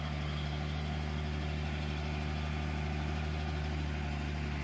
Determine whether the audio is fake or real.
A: real